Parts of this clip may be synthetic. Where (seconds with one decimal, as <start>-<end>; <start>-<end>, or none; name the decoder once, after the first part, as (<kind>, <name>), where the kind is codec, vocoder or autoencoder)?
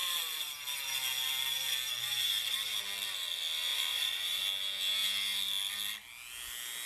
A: 0.0-2.8 (vocoder, BigVGAN v2); 3.7-4.4